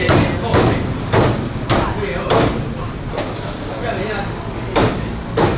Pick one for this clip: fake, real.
real